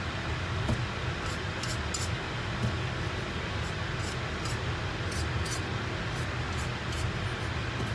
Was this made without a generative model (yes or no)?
yes